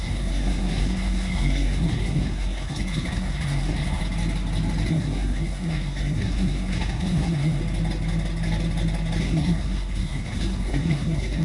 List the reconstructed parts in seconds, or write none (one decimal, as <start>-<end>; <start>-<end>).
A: 0.0-4.0; 4.9-7.6; 9.2-11.4